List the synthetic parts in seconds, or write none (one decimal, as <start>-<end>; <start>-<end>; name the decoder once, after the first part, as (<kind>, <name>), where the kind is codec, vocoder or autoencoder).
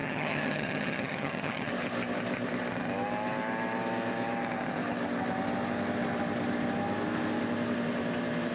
0.0-1.7 (vocoder, HiFi-GAN)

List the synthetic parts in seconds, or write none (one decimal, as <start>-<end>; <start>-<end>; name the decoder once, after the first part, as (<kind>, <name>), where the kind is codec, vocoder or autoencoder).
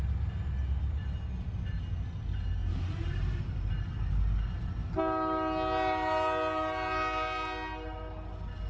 2.6-3.7 (vocoder, BigVGAN v2)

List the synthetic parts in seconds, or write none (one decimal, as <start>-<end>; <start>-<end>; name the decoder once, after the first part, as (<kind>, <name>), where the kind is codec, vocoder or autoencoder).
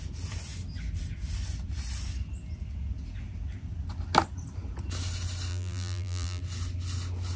5.5-6.4 (vocoder, BigVGAN v2)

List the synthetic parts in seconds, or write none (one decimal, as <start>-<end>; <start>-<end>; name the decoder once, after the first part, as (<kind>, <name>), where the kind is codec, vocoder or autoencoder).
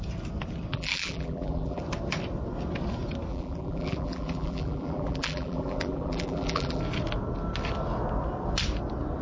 0.7-1.8 (vocoder, BigVGAN v2); 3.3-6.8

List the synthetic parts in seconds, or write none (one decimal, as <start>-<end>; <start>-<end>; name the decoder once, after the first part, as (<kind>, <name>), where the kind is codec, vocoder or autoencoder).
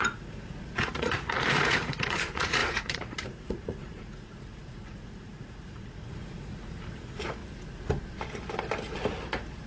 0.0-7.4 (vocoder, Vocos)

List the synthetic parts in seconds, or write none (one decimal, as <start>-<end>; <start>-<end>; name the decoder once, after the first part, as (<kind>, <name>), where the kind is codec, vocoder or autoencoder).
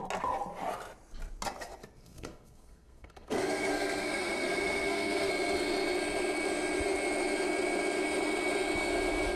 2.0-5.3 (codec, SNAC)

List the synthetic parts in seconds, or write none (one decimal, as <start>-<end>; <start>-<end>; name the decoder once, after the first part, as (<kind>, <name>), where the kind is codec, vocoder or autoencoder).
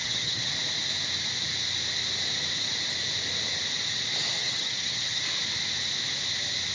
0.0-0.5 (vocoder, HiFi-GAN); 4.4-5.2